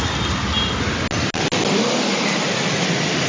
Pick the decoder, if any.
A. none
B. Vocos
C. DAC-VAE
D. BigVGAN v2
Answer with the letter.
A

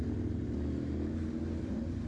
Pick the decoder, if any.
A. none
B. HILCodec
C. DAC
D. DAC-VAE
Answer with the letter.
A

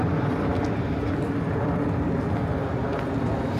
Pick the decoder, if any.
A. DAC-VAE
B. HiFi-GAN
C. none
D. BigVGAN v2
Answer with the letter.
C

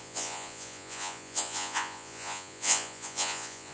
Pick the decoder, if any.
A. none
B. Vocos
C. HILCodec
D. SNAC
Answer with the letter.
B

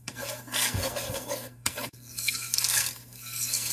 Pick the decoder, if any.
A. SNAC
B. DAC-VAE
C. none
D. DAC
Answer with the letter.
A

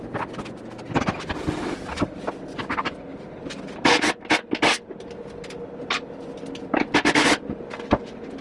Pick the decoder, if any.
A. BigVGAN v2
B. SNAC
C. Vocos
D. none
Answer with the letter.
D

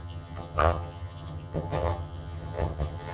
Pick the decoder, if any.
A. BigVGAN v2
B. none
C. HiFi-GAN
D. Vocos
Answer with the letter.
C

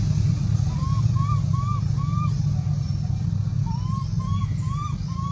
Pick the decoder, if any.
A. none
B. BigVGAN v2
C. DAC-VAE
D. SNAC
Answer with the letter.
A